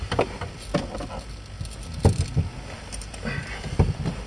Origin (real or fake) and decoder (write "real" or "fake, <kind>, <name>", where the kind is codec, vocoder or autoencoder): real